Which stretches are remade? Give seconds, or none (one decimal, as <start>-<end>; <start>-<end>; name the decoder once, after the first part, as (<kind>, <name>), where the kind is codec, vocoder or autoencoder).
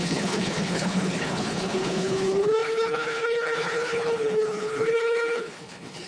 0.0-6.1 (codec, HILCodec)